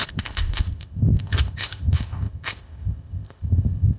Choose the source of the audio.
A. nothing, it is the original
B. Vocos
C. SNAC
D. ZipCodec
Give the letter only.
D